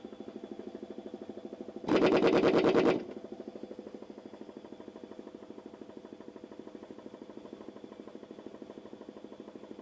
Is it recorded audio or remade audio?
recorded